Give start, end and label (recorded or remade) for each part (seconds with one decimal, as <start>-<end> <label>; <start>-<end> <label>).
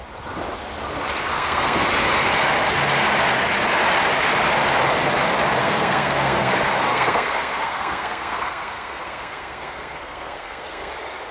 0.0-1.3 recorded; 1.3-1.8 remade; 1.8-5.6 recorded; 5.6-6.5 remade; 6.5-6.9 recorded; 6.9-10.9 remade; 10.9-11.3 recorded